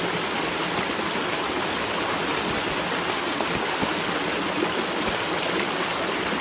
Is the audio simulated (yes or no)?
no